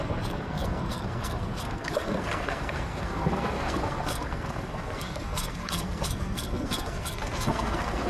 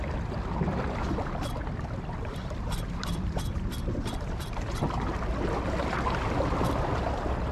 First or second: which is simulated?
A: first